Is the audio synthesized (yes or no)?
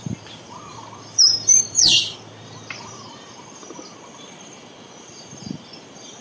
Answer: yes